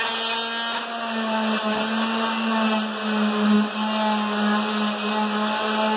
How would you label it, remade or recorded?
recorded